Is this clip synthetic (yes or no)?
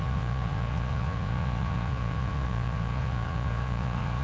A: yes